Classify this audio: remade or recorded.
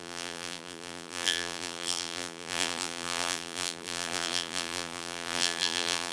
remade